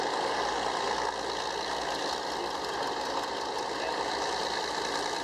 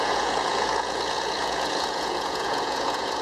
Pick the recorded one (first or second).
first